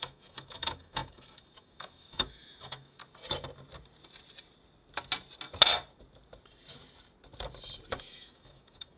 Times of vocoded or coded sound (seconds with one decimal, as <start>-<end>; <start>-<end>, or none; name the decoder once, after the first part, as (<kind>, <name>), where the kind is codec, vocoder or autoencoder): 0.0-3.0 (autoencoder, DAC-VAE); 8.0-9.0